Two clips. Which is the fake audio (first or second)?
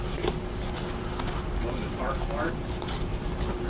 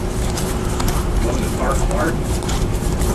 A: second